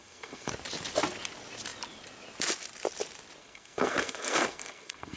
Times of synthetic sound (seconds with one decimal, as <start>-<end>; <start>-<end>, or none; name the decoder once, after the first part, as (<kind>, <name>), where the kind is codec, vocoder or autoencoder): 0.0-0.5 (codec, SNAC); 3.4-5.2